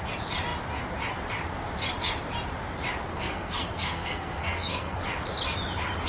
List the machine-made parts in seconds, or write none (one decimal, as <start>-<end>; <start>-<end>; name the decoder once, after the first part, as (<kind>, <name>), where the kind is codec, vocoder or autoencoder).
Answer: 3.1-5.0 (codec, SNAC)